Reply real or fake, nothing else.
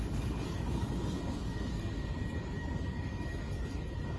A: fake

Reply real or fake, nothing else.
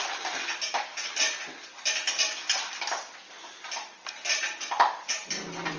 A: real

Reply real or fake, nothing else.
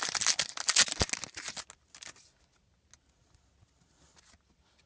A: real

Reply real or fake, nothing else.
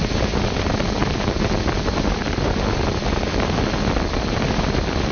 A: real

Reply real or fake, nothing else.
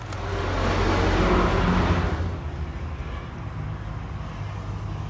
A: real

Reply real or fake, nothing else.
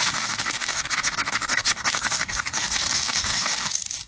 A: fake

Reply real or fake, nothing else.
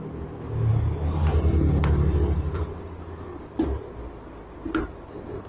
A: real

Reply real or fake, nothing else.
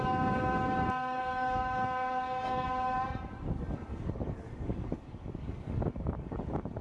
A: fake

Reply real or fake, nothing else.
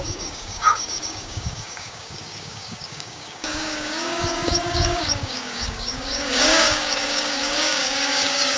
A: fake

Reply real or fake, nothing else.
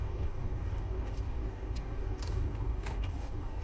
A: fake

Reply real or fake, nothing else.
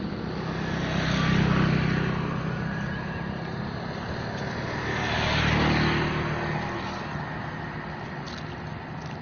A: real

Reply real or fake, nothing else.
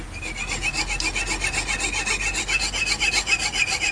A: real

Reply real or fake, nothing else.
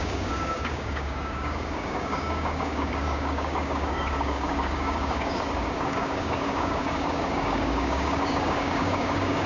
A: fake